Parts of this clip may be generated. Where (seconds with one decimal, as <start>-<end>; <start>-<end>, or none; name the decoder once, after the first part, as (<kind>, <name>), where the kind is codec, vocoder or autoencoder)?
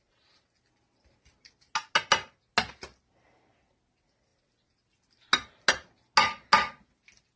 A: none